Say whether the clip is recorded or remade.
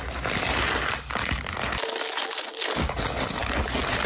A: recorded